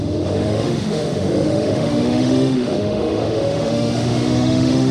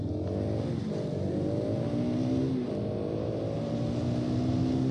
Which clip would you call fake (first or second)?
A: first